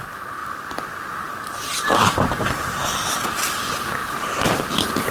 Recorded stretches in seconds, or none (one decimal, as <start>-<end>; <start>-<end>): 0.0-1.7; 2.3-4.0; 4.6-5.1